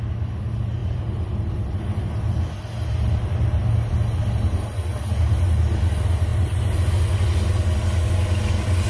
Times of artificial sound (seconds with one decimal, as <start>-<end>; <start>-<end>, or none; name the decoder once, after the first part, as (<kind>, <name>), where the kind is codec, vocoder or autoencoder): 0.8-1.5 (vocoder, BigVGAN v2)